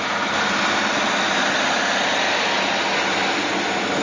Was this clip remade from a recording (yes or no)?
no